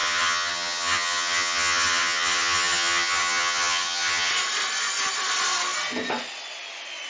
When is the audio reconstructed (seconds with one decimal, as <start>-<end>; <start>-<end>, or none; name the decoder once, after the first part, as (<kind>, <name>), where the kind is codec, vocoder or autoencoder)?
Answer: 0.0-4.3 (vocoder, HiFi-GAN)